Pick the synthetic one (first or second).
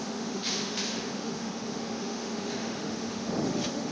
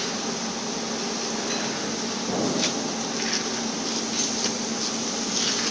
first